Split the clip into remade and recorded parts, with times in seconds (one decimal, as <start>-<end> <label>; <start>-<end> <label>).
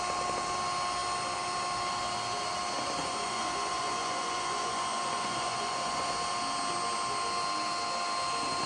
0.0-3.0 recorded; 3.0-6.1 remade; 6.1-8.7 recorded